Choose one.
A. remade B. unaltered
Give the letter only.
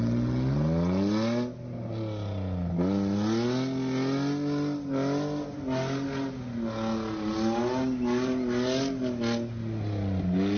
B